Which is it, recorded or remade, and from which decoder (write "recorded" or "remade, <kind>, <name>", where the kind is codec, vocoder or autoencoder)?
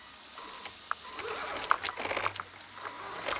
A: recorded